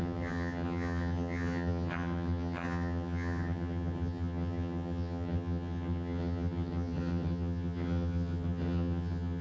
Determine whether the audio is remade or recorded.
remade